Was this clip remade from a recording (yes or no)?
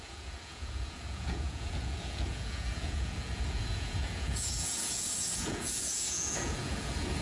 yes